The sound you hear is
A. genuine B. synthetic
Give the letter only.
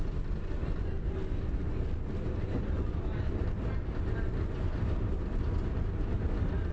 A